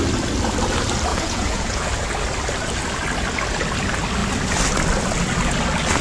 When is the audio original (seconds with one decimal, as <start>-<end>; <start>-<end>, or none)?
0.0-1.1; 1.9-6.0